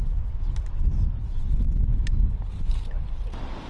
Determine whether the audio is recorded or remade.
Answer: recorded